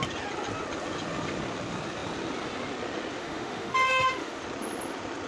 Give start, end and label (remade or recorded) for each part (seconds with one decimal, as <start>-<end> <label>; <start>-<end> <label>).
0.0-3.2 recorded; 3.2-4.4 remade; 4.4-5.3 recorded